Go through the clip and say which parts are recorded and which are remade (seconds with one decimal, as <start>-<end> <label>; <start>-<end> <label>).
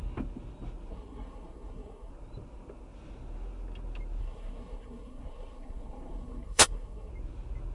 0.0-0.9 recorded; 0.9-2.1 remade; 2.1-4.2 recorded; 4.2-7.1 remade; 7.1-7.7 recorded